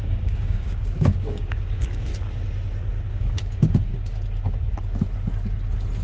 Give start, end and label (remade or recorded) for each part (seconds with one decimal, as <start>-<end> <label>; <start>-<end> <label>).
0.0-2.1 remade; 2.1-3.1 recorded; 3.1-3.9 remade; 3.9-6.0 recorded

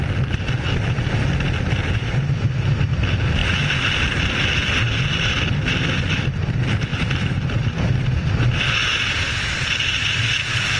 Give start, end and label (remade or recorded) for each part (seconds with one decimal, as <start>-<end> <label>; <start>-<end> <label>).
0.0-1.8 recorded; 1.8-2.9 remade; 2.9-6.9 recorded; 6.9-8.6 remade; 8.6-10.8 recorded

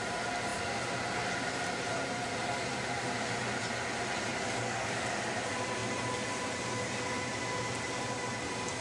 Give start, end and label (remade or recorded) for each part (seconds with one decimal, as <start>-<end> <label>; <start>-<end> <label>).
0.0-4.3 recorded; 4.3-5.2 remade; 5.2-8.8 recorded

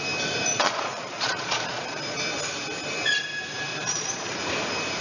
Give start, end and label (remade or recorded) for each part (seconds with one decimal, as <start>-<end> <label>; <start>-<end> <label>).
0.0-0.5 recorded; 0.5-2.0 remade; 2.0-3.7 recorded; 3.7-4.3 remade; 4.3-5.0 recorded

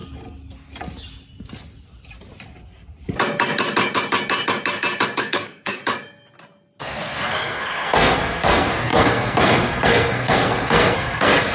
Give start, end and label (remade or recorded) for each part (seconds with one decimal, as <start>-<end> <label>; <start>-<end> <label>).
0.0-5.2 recorded; 5.2-5.8 remade; 5.8-6.8 recorded; 6.8-11.5 remade

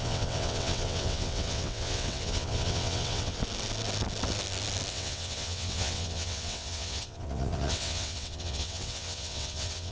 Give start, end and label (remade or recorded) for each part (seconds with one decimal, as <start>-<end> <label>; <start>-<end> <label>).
0.0-3.4 remade; 3.4-4.9 recorded; 4.9-9.9 remade

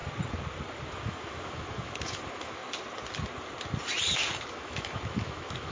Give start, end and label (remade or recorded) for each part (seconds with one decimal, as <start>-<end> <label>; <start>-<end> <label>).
0.0-0.9 recorded; 0.9-2.6 remade; 2.6-4.5 recorded; 4.5-5.7 remade